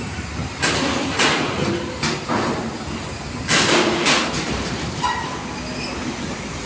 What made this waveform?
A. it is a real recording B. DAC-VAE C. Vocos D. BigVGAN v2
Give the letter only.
A